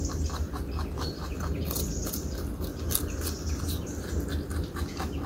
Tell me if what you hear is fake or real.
real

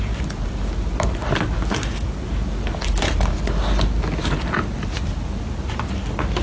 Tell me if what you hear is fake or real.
real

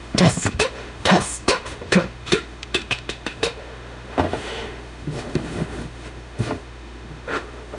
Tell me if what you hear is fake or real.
fake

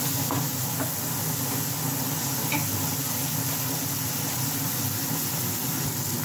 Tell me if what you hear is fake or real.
real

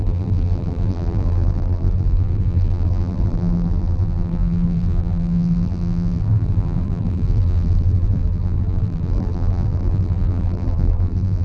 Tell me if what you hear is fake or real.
fake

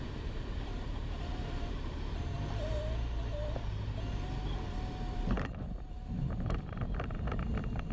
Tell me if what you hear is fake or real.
fake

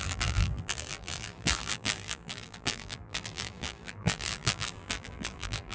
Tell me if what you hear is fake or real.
fake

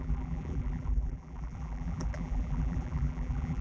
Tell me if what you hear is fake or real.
fake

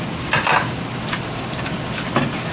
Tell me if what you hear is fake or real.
real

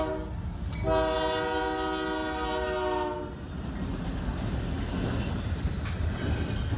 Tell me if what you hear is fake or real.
real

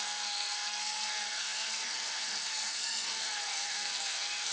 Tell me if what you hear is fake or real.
fake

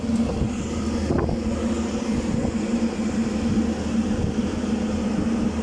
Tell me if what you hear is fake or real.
real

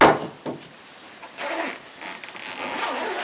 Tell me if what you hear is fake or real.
real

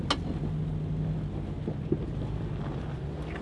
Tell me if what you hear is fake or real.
real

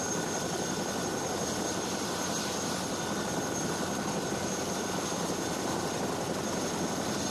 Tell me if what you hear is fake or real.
real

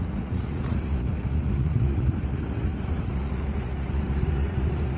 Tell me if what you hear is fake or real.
fake